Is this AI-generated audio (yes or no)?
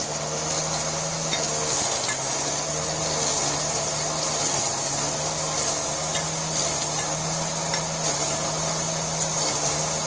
no